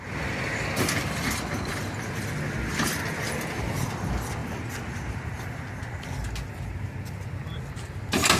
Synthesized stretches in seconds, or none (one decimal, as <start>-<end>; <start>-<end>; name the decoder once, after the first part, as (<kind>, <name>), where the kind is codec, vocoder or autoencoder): 4.4-5.6 (vocoder, BigVGAN v2)

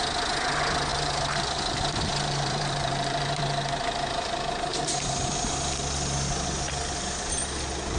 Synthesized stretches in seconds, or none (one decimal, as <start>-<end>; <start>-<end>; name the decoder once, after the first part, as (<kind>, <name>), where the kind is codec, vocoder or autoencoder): 0.9-3.4 (vocoder, BigVGAN v2); 4.7-5.5

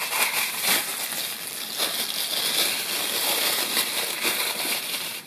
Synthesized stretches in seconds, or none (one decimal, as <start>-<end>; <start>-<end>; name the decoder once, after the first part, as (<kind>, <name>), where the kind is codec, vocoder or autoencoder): 0.0-0.9 (vocoder, BigVGAN v2); 3.2-5.3

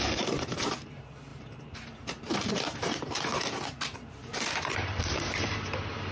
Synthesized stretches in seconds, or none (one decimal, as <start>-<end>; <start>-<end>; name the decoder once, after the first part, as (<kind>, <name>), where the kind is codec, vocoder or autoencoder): 0.0-6.1 (vocoder, BigVGAN v2)

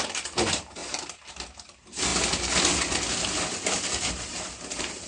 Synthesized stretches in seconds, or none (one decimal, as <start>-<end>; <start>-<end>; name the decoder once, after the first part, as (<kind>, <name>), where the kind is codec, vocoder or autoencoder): 0.0-2.1 (vocoder, BigVGAN v2); 4.1-5.1

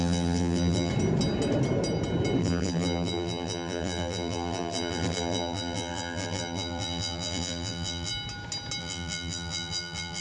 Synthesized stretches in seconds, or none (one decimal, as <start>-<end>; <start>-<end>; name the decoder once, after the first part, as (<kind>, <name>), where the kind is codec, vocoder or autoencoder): 0.0-0.9 (vocoder, BigVGAN v2); 2.4-8.1; 8.8-10.2